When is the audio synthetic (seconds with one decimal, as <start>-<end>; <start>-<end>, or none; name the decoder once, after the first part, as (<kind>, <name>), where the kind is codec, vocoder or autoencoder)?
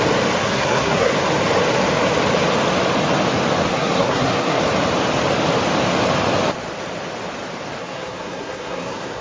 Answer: 0.4-1.1 (codec, SNAC); 3.7-4.6; 7.8-9.2